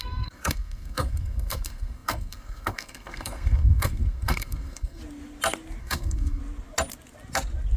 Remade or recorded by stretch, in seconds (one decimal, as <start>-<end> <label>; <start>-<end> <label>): 0.0-5.0 remade; 5.0-5.8 recorded; 5.8-6.4 remade; 6.4-7.8 recorded